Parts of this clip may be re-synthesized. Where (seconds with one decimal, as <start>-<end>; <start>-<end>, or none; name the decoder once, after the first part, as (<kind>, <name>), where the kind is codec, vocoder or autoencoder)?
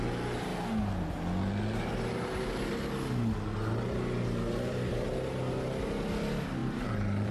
6.6-7.3 (vocoder, BigVGAN v2)